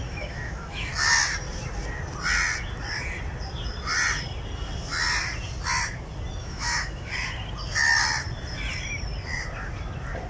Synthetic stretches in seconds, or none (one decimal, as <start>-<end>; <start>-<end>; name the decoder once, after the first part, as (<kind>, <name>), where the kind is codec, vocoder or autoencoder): 0.0-0.9 (autoencoder, DAC-VAE); 6.4-7.1